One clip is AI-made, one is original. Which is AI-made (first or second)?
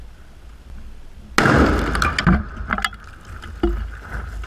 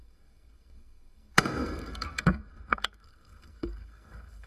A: second